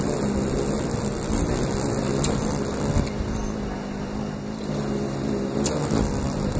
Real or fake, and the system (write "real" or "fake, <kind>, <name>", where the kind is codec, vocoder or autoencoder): real